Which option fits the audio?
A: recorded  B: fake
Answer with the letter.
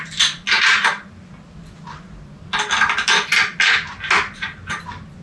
A